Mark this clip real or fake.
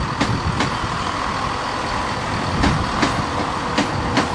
real